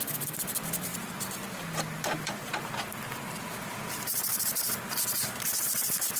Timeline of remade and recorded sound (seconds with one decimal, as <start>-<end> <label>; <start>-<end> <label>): 0.0-0.9 remade; 0.9-2.0 recorded; 2.0-2.4 remade; 2.4-3.1 recorded; 3.1-6.2 remade